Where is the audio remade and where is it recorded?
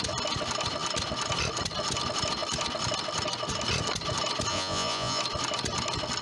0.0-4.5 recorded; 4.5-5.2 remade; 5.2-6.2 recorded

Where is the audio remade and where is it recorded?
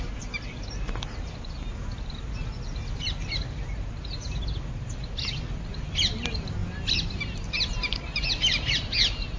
0.0-9.4 recorded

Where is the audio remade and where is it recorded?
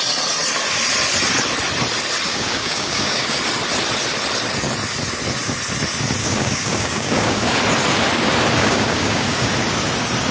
0.0-2.3 recorded; 2.3-3.4 remade; 3.4-6.2 recorded; 6.2-7.6 remade; 7.6-8.6 recorded; 8.6-9.5 remade; 9.5-10.3 recorded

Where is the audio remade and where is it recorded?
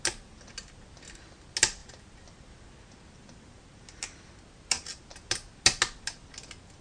0.0-6.8 recorded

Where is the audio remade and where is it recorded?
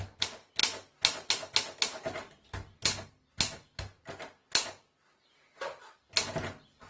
0.0-6.9 recorded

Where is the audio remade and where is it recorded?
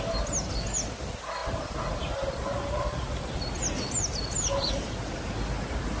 0.0-6.0 recorded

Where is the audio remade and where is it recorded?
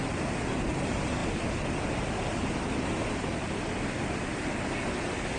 0.0-5.4 recorded